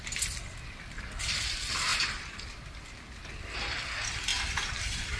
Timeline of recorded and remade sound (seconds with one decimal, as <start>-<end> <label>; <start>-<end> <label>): 0.0-5.2 recorded